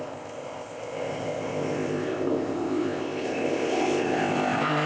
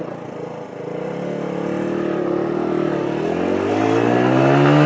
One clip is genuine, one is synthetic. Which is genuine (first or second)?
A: second